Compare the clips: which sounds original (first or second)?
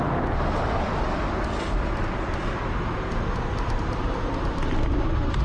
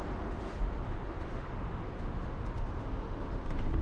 first